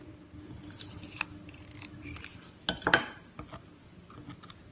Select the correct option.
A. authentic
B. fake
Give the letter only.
A